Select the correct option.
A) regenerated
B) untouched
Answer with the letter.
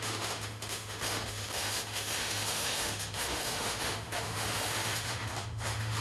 A